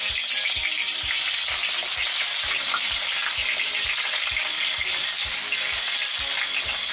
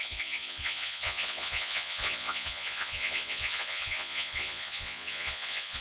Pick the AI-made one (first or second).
second